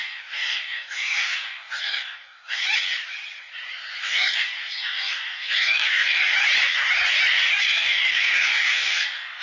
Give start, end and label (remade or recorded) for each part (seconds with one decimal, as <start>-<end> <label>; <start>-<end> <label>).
0.0-2.6 remade; 2.6-4.0 recorded; 4.0-6.2 remade; 6.2-7.6 recorded; 7.6-9.4 remade